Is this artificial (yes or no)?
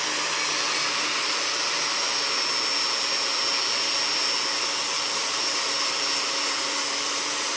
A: no